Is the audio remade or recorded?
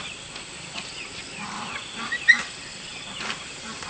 recorded